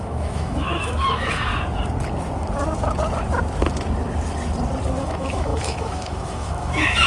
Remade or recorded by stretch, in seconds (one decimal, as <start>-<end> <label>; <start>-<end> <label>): 0.0-1.5 remade; 1.5-5.0 recorded; 5.0-7.1 remade